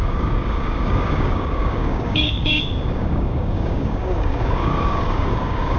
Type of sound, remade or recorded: remade